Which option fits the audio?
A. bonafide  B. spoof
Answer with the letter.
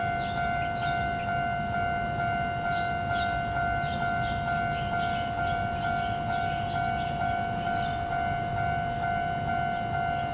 A